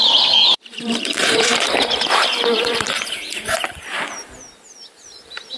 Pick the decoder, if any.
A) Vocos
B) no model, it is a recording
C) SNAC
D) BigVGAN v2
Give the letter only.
D